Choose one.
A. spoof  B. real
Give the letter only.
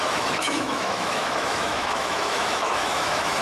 A